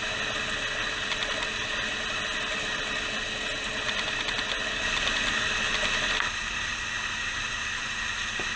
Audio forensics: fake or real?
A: real